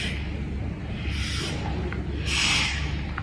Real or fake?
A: real